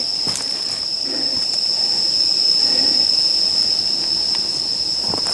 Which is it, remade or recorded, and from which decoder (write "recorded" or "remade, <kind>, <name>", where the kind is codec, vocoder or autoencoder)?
recorded